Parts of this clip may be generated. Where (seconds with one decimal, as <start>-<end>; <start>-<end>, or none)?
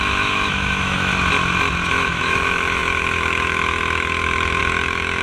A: 0.0-1.1; 1.9-5.2